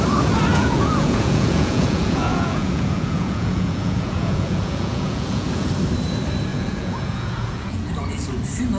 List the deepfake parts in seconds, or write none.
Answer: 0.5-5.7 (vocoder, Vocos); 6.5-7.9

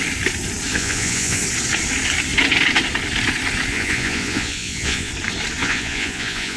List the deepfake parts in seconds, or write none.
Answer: 0.7-1.4 (vocoder, Vocos); 3.7-5.1; 5.6-6.6

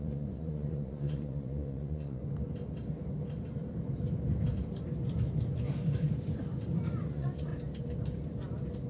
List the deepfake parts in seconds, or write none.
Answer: 0.0-2.2 (vocoder, Vocos); 7.1-7.5